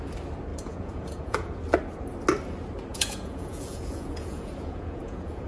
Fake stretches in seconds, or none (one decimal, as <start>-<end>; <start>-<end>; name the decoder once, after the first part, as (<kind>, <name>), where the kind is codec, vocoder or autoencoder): 0.5-1.6 (vocoder, Vocos); 2.9-5.5